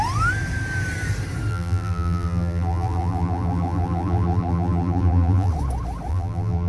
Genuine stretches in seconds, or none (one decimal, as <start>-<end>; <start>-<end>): 0.0-1.5; 5.5-6.1